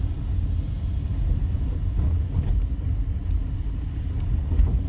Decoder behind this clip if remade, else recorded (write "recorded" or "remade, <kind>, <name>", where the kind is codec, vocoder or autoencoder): recorded